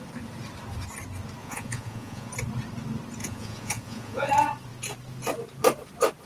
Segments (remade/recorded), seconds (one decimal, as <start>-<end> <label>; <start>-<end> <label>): 0.0-1.4 recorded; 1.4-2.3 remade; 2.3-3.2 recorded; 3.2-4.3 remade; 4.3-6.3 recorded